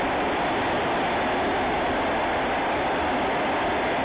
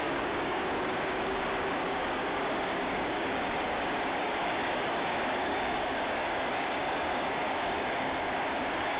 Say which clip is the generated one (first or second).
second